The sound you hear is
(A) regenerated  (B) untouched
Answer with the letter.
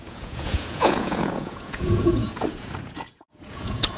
A